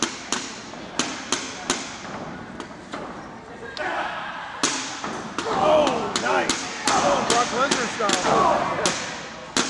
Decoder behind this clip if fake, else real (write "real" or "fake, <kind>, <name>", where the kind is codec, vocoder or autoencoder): real